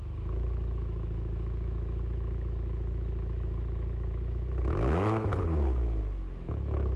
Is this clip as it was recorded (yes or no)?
no